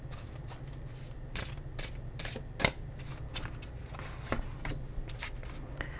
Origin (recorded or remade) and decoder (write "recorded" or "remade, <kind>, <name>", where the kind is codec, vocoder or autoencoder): recorded